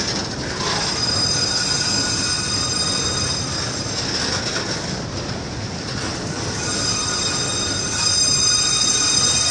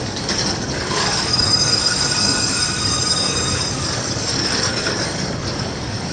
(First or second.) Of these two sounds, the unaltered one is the first